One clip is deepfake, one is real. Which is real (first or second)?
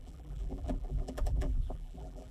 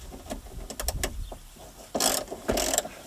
second